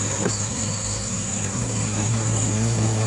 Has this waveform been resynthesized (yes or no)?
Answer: yes